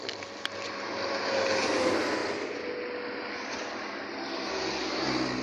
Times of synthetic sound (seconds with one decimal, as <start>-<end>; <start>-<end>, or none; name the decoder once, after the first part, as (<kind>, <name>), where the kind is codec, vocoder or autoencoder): none